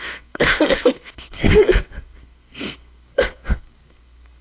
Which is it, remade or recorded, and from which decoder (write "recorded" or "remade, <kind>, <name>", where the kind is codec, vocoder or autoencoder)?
remade, codec, SNAC